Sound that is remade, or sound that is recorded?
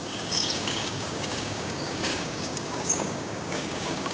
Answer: remade